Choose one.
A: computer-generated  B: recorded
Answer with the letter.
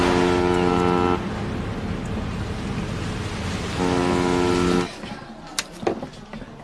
B